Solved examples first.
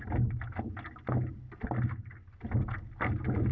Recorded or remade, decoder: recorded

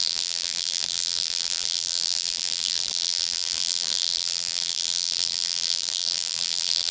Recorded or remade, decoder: remade, vocoder, BigVGAN v2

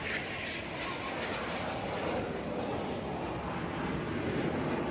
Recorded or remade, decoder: recorded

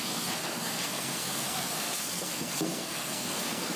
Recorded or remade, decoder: remade, codec, SNAC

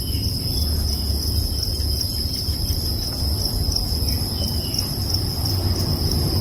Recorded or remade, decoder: recorded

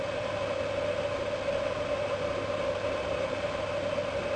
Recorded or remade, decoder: recorded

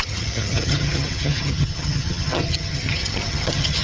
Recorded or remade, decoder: remade, vocoder, HiFi-GAN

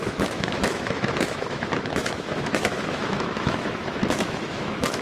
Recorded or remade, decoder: remade, autoencoder, DAC-VAE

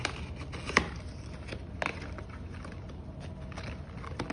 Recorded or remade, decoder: recorded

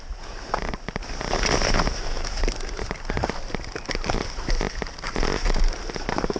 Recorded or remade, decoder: recorded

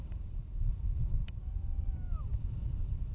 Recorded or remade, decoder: remade, vocoder, BigVGAN v2